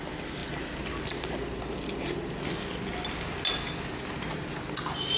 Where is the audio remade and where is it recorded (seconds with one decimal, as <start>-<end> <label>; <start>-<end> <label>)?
0.0-5.2 recorded